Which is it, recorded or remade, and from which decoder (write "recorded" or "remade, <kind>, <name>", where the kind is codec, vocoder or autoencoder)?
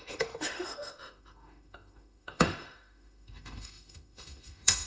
remade, autoencoder, DAC-VAE